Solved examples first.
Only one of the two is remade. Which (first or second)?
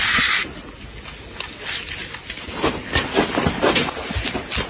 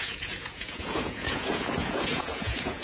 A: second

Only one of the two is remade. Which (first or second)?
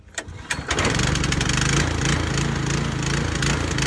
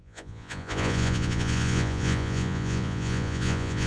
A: second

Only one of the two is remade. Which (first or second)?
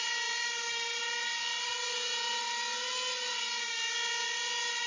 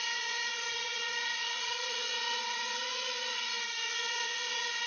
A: second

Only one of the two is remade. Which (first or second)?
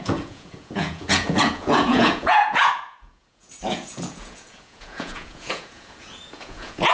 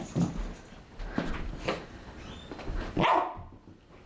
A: first